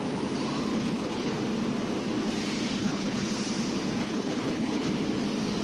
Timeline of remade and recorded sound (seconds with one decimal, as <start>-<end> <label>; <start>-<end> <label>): 0.0-0.7 recorded; 0.7-1.3 remade; 1.3-2.8 recorded; 2.8-3.3 remade; 3.3-4.0 recorded; 4.0-4.9 remade; 4.9-5.6 recorded